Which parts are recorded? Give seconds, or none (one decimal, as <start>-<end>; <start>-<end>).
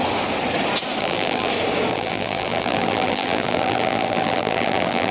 0.0-1.0; 1.5-1.9